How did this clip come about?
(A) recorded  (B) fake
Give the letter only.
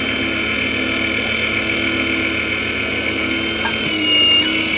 A